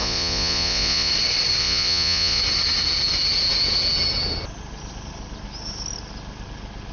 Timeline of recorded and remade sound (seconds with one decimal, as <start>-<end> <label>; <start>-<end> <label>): 0.0-1.1 remade; 1.1-1.6 recorded; 1.6-2.4 remade; 2.4-6.9 recorded

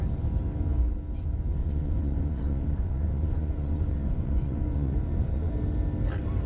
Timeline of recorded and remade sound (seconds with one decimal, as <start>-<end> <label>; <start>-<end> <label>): 0.0-1.6 recorded; 1.6-5.5 remade; 5.5-6.5 recorded

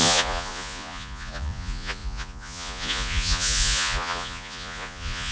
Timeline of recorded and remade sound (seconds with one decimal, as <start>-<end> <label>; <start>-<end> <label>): 0.0-5.3 remade

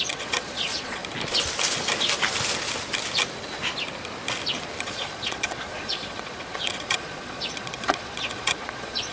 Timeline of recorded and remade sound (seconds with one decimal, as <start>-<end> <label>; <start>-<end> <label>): 0.0-1.0 remade; 1.0-4.8 recorded; 4.8-9.1 remade

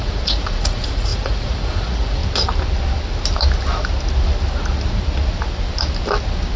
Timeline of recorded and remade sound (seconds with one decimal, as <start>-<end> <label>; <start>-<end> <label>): 0.0-2.2 remade; 2.2-6.6 recorded

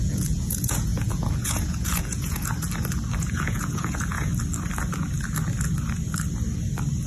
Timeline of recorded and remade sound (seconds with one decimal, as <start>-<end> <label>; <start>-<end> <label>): 0.0-2.5 remade; 2.5-3.2 recorded; 3.2-4.3 remade; 4.3-7.1 recorded

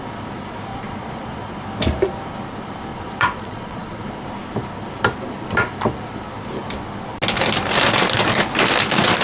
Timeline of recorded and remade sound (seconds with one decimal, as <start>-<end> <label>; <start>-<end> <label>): 0.0-0.7 recorded; 0.7-1.7 remade; 1.7-2.9 recorded; 2.9-4.0 remade; 4.0-9.2 recorded